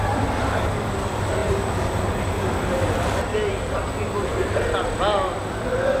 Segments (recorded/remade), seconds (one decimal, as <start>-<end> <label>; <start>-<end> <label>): 0.0-6.0 recorded